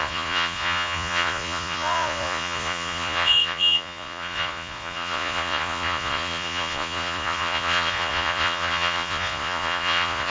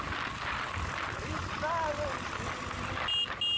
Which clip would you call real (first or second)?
second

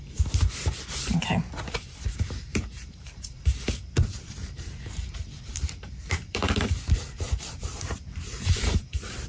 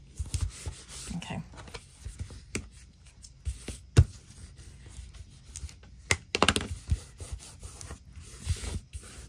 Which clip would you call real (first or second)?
second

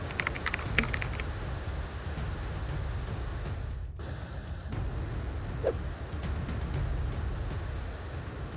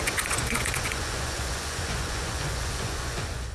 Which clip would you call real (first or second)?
first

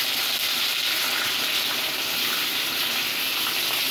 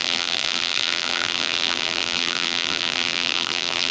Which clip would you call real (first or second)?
first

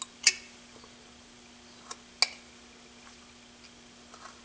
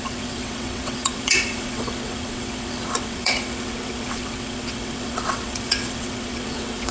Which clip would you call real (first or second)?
first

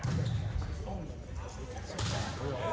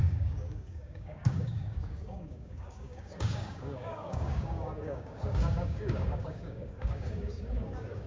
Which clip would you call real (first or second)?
first